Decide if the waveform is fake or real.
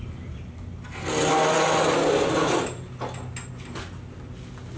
real